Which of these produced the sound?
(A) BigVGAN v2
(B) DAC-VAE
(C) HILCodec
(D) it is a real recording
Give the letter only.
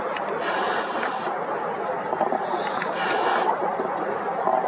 A